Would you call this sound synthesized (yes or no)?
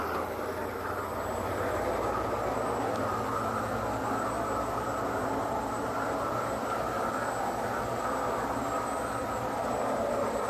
no